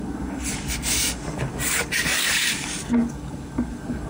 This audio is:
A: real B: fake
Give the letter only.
B